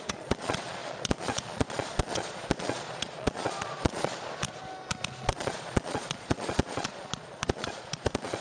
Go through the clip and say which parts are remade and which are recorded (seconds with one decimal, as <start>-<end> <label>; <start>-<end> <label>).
0.0-4.1 remade; 4.1-5.2 recorded; 5.2-8.4 remade